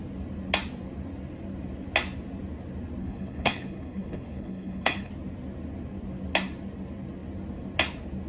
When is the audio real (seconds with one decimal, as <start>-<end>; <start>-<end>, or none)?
0.0-3.0; 5.1-8.3